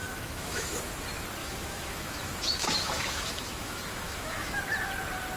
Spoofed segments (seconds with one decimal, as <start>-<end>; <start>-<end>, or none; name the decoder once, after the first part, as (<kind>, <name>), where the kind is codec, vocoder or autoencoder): 0.0-0.8 (autoencoder, DAC-VAE); 1.4-4.6